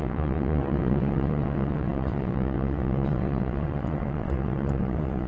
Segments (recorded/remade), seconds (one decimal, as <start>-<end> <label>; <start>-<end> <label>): 0.0-5.3 remade